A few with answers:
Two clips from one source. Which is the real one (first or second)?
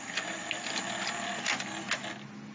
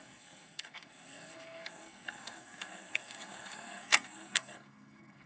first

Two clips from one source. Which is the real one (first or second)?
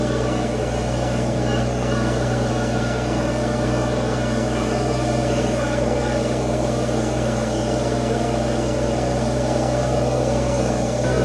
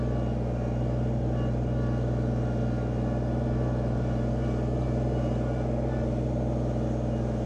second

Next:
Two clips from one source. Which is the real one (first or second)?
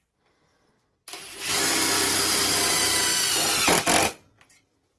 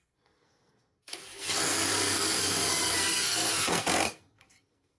first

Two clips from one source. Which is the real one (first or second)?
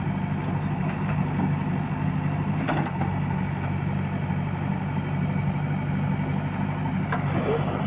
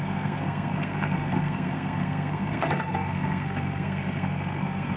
first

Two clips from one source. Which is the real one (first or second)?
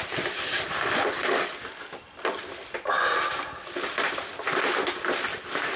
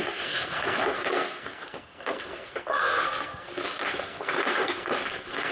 first